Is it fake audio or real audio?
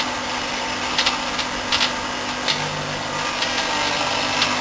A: real